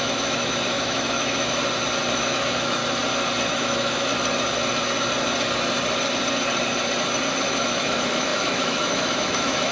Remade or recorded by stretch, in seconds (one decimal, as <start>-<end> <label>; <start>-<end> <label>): 0.0-1.6 remade; 1.6-2.2 recorded; 2.2-2.8 remade; 2.8-3.5 recorded; 3.5-4.1 remade; 4.1-7.4 recorded; 7.4-9.7 remade